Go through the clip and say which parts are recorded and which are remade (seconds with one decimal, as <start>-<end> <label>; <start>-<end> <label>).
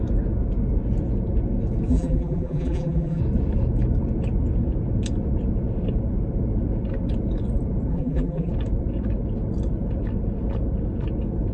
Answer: 0.0-1.9 recorded; 1.9-3.2 remade; 3.2-7.9 recorded; 7.9-8.5 remade; 8.5-11.5 recorded